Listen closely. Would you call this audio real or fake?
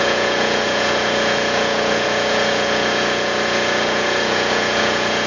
fake